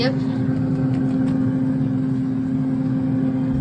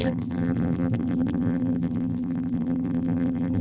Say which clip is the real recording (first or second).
first